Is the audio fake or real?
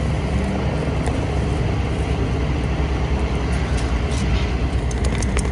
real